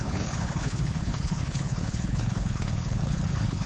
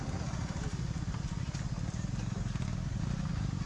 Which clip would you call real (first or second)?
second